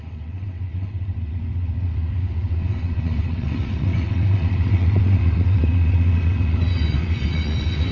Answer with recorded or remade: remade